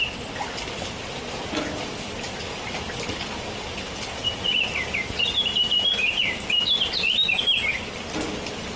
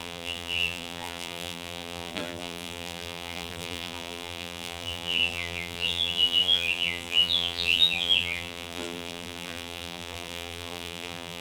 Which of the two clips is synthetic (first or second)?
second